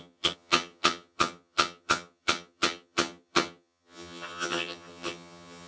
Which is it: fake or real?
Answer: fake